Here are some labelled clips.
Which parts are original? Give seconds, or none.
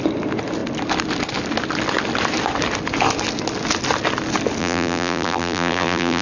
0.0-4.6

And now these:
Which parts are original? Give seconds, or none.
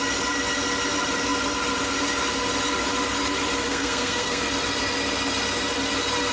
0.0-3.6; 4.4-6.3